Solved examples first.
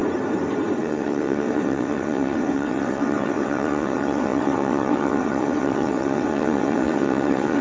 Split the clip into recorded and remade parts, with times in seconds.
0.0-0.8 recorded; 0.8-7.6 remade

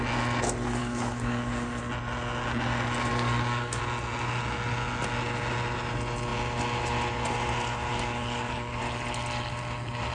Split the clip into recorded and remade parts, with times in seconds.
0.0-0.8 recorded; 0.8-1.8 remade; 1.8-3.1 recorded; 3.1-3.8 remade; 3.8-7.9 recorded; 7.9-8.8 remade; 8.8-10.1 recorded